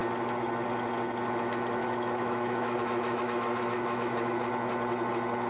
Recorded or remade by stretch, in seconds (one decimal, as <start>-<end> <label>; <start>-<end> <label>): 0.0-1.8 recorded; 1.8-4.5 remade; 4.5-5.5 recorded